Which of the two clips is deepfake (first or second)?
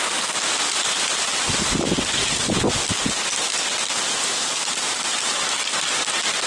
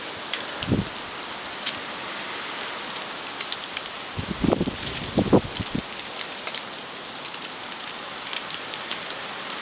second